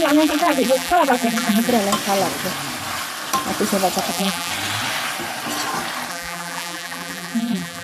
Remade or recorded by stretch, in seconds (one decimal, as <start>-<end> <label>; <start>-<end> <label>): 0.0-1.7 remade; 1.7-4.1 recorded; 4.1-4.5 remade; 4.5-6.1 recorded; 6.1-7.8 remade